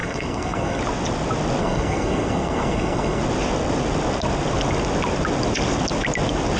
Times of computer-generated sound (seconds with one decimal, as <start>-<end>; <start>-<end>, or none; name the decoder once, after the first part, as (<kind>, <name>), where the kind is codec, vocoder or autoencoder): 0.0-0.8 (codec, SNAC); 1.6-3.2